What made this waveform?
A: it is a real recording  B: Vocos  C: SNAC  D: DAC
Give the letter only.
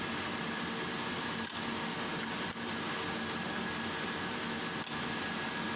A